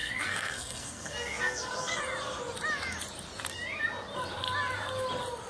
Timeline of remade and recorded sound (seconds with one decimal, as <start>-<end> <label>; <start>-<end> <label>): 0.0-2.0 remade; 2.0-5.5 recorded